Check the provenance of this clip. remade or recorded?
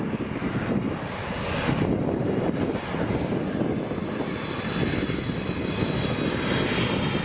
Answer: recorded